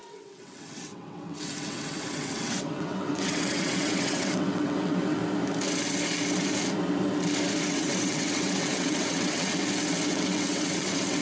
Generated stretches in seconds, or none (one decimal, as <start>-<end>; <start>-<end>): 0.0-5.2; 7.7-9.6; 10.1-11.2